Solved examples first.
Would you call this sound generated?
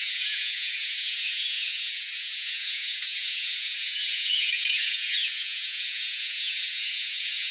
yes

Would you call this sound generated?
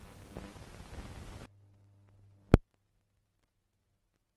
no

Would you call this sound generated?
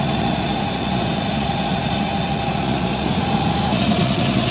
yes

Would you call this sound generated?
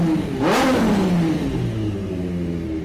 no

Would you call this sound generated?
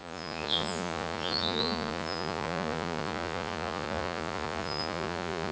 yes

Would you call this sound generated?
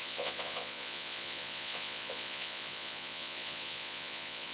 yes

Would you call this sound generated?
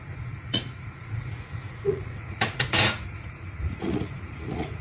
yes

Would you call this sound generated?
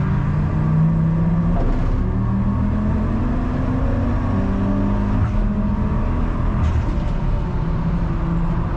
no